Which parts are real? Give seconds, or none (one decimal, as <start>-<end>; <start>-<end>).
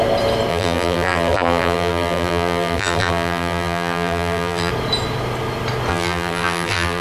0.0-0.5; 4.7-5.9